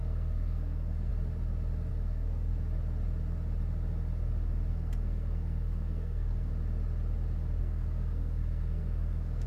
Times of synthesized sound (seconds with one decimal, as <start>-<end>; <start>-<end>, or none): 0.0-1.1; 1.9-2.5; 4.7-6.5; 7.6-9.5